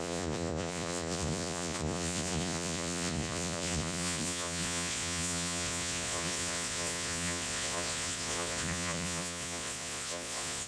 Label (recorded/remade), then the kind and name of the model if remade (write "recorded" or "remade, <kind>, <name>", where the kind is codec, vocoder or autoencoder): remade, vocoder, Vocos